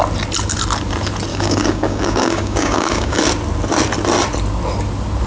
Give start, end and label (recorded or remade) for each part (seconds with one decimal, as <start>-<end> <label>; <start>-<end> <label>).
0.0-1.3 recorded; 1.3-3.2 remade; 3.2-5.3 recorded